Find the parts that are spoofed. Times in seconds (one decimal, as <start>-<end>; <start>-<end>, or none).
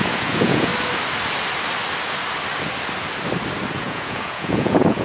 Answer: 0.0-0.7; 3.7-5.0